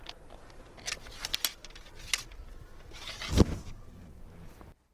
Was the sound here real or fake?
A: real